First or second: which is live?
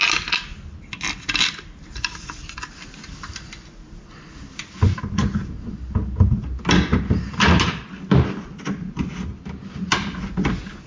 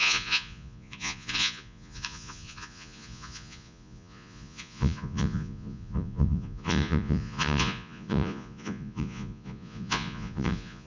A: first